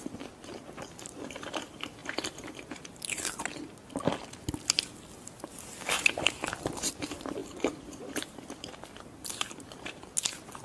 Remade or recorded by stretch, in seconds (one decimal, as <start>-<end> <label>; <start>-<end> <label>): 0.0-2.0 recorded; 2.0-3.3 remade; 3.3-7.4 recorded; 7.4-10.1 remade; 10.1-10.6 recorded